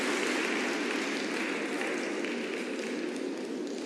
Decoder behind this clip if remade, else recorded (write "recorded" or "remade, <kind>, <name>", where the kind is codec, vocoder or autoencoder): recorded